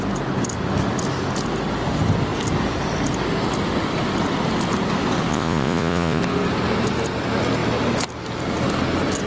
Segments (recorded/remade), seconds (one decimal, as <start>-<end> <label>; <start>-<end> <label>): 0.0-5.3 recorded; 5.3-6.2 remade; 6.2-9.3 recorded